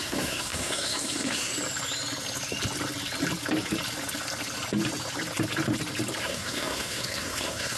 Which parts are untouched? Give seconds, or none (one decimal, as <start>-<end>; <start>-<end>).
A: 1.5-6.2